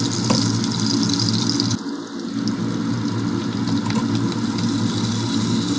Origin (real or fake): real